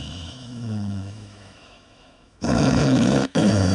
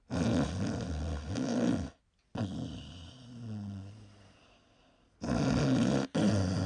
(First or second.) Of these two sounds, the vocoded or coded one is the first